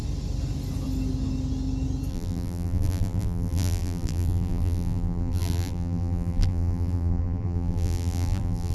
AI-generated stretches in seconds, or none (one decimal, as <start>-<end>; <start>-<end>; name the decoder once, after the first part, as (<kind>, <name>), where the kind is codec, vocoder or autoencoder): 2.1-8.7 (vocoder, BigVGAN v2)